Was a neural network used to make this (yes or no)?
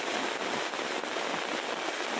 no